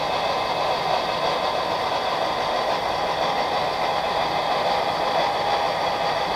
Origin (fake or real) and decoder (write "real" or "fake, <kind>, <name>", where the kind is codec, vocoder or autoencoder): real